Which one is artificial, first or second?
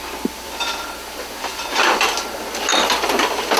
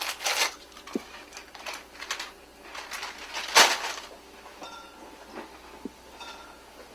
first